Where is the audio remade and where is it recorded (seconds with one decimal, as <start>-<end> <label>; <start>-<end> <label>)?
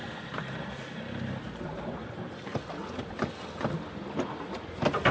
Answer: 0.0-5.1 recorded